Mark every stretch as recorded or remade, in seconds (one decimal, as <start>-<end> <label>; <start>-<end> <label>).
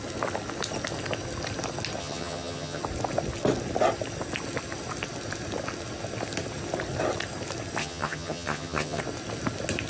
0.0-2.0 recorded; 2.0-2.8 remade; 2.8-7.8 recorded; 7.8-9.0 remade; 9.0-9.9 recorded